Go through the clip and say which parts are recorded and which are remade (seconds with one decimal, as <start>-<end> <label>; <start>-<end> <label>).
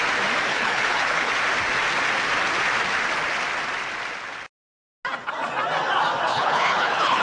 0.0-0.5 recorded; 0.5-1.3 remade; 1.3-6.3 recorded; 6.3-7.2 remade